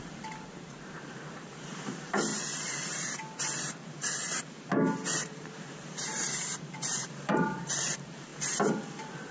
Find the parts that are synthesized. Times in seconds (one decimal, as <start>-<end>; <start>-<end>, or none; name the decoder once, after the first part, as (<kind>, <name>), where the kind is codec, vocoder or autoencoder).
0.0-2.3 (vocoder, BigVGAN v2); 5.2-9.3

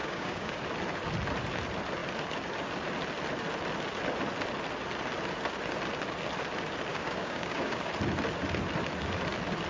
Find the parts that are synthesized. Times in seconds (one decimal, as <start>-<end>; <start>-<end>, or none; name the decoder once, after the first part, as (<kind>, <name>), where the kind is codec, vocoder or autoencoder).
0.0-0.6 (codec, DAC); 6.9-7.9

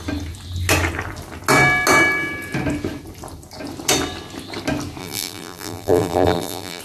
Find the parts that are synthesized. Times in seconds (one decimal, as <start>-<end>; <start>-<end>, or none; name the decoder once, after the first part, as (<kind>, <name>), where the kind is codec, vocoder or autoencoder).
5.0-6.8 (vocoder, BigVGAN v2)

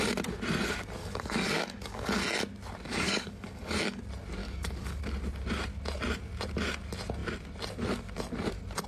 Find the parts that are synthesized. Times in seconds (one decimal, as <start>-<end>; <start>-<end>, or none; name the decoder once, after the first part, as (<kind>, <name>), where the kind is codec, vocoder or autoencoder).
1.0-2.2 (codec, DAC); 2.9-4.0; 4.4-5.0